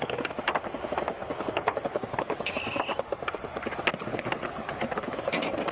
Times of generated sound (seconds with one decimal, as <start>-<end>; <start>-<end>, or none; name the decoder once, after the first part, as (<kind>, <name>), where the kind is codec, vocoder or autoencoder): 1.2-2.5 (codec, HILCodec); 4.1-5.1